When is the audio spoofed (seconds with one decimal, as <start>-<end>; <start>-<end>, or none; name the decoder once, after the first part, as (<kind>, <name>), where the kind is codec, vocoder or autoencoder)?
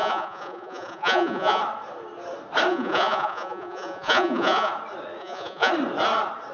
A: 0.0-1.6 (vocoder, Vocos); 2.7-4.7; 5.2-5.7